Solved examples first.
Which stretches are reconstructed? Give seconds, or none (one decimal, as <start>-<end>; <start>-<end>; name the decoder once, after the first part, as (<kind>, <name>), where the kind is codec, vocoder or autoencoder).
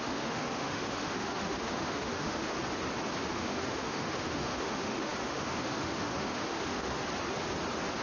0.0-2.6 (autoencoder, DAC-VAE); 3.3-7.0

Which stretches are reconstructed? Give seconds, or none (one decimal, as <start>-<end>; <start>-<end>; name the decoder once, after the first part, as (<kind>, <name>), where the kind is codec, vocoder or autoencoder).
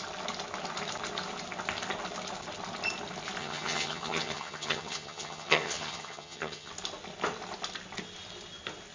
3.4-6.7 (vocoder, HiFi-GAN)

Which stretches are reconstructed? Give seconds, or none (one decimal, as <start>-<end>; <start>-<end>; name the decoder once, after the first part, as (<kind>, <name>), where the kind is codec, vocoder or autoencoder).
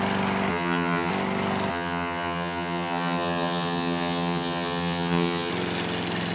0.5-1.1 (vocoder, HiFi-GAN); 1.7-5.5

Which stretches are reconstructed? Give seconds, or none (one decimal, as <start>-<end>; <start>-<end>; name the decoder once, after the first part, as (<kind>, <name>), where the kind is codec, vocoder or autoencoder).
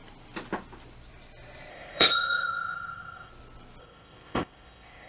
1.7-3.3 (codec, ZipCodec); 3.8-5.1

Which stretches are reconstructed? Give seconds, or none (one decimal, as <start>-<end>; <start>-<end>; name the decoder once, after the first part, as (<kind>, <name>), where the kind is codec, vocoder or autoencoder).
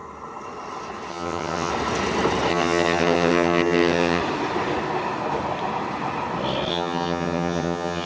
1.1-1.7 (vocoder, HiFi-GAN); 2.5-4.2; 6.7-8.1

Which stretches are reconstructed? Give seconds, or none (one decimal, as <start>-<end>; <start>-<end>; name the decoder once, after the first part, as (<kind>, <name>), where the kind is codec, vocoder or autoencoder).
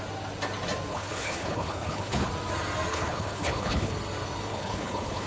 0.9-2.3 (codec, HILCodec); 2.9-3.9; 4.5-5.3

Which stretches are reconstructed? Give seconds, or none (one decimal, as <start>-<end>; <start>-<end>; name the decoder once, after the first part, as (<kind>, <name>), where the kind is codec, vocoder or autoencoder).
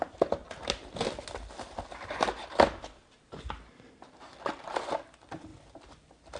0.0-0.4 (vocoder, BigVGAN v2); 4.2-6.4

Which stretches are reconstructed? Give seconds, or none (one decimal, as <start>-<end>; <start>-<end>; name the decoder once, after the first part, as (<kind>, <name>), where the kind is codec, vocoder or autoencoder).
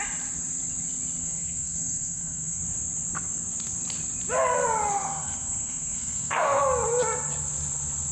1.2-2.6 (codec, SNAC); 4.9-6.6